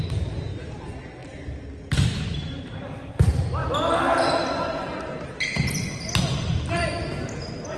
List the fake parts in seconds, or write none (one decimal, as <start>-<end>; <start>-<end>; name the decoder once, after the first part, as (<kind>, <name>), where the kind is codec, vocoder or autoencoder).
1.2-1.7 (vocoder, BigVGAN v2)